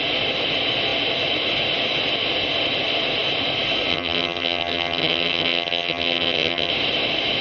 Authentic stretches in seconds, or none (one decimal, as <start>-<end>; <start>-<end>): 0.0-3.9; 6.7-7.4